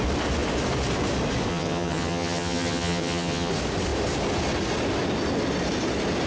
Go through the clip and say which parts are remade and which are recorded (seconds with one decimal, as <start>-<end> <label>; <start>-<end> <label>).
0.0-1.5 recorded; 1.5-3.5 remade; 3.5-6.3 recorded